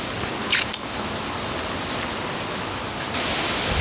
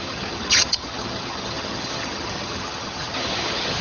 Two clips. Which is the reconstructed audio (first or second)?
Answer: second